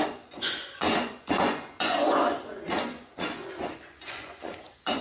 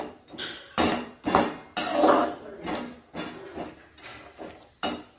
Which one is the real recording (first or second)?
second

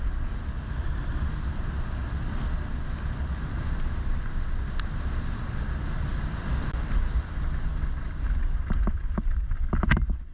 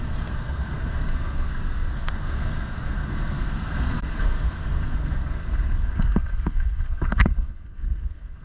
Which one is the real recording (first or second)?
first